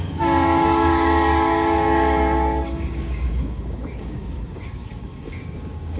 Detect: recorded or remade remade